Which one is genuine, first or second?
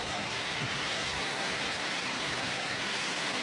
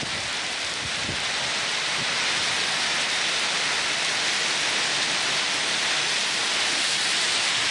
second